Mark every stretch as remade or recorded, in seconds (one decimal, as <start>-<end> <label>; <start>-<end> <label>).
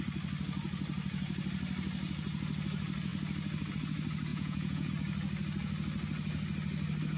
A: 0.0-4.3 recorded; 4.3-4.9 remade; 4.9-7.2 recorded